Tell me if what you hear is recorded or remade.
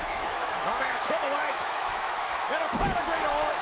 remade